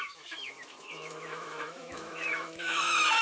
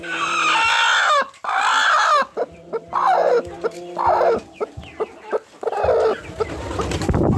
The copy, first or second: first